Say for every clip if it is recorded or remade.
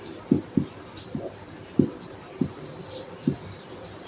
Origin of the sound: remade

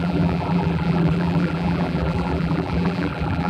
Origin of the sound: remade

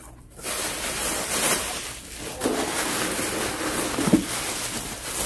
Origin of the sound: recorded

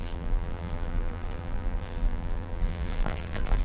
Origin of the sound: remade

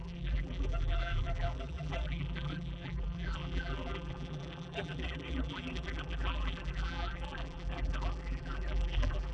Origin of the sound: remade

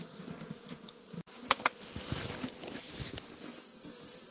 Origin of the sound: remade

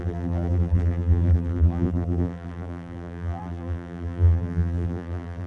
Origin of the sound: remade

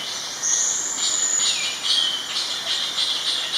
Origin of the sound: recorded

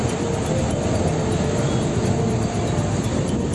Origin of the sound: recorded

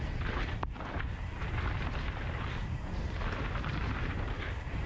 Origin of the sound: recorded